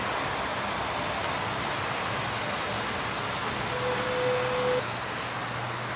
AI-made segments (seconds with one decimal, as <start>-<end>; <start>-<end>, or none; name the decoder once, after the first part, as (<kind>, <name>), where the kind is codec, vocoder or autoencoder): none